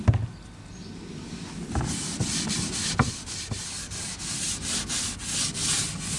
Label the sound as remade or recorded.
recorded